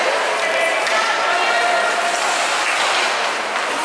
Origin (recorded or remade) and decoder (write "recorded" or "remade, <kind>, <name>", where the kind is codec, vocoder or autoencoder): recorded